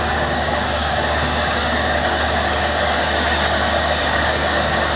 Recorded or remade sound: remade